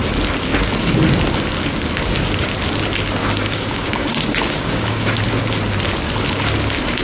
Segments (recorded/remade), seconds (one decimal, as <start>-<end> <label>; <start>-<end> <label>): 0.0-3.2 recorded; 3.2-5.2 remade; 5.2-7.0 recorded